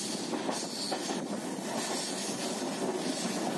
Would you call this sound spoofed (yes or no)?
no